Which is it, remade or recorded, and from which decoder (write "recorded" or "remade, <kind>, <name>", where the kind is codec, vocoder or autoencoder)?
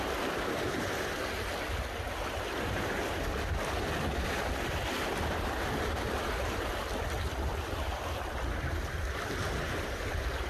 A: recorded